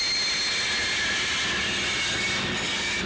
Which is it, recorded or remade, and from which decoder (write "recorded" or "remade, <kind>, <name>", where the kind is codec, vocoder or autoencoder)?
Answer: recorded